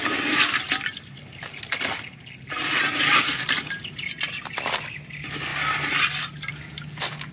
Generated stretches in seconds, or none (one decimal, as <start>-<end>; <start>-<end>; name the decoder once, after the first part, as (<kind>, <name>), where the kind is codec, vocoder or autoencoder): none